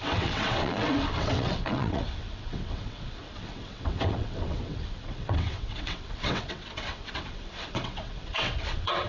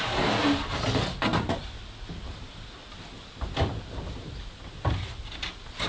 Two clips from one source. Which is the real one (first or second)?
second